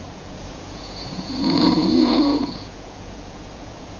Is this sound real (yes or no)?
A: no